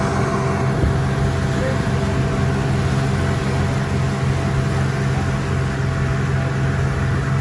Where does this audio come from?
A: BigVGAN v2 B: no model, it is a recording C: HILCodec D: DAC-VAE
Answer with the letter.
B